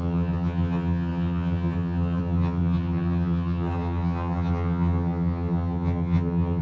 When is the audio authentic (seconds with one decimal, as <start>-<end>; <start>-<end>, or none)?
none